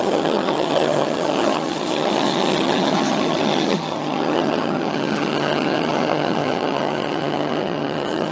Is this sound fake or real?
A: fake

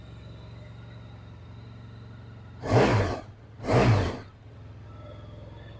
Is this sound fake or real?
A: real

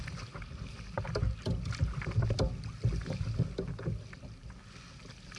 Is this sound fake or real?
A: real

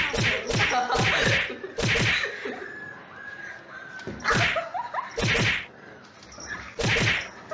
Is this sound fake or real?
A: real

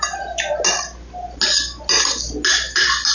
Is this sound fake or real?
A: real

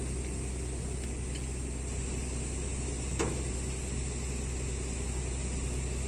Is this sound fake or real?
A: real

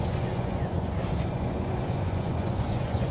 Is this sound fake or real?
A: fake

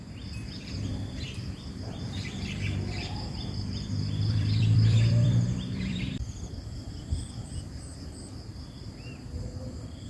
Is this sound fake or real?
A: fake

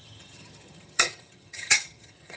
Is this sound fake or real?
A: fake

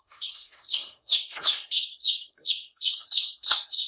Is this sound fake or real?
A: fake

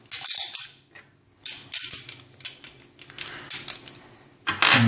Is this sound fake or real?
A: real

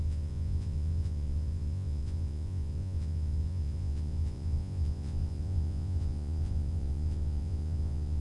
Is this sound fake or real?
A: fake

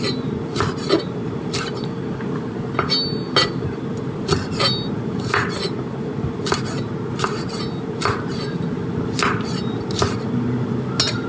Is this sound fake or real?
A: real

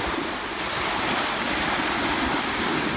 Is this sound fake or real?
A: real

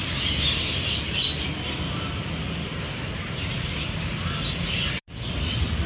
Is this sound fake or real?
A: real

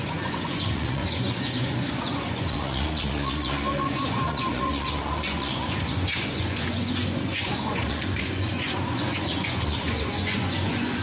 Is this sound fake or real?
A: fake